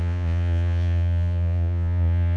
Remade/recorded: remade